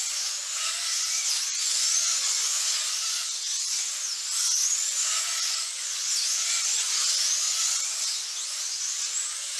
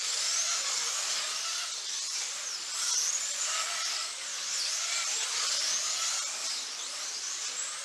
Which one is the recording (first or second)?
second